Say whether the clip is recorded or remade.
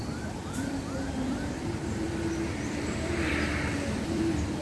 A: remade